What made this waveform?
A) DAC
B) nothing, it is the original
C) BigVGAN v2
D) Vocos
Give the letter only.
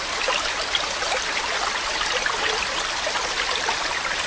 C